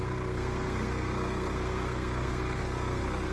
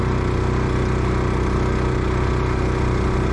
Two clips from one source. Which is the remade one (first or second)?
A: first